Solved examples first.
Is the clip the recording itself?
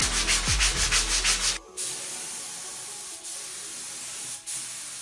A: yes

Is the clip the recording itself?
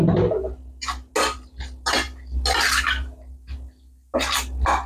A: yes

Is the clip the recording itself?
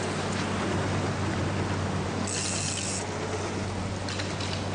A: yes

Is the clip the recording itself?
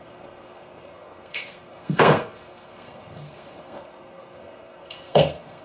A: no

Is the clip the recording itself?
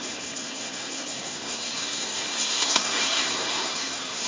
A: no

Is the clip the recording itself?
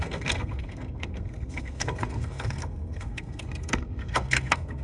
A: no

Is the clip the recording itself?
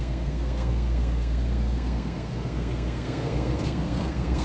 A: no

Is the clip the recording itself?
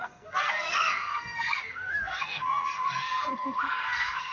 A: no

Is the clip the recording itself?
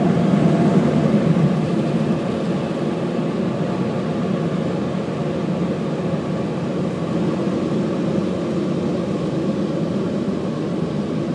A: yes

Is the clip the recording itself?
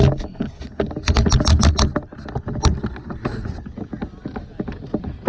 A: yes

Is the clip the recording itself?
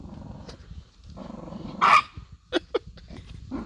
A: yes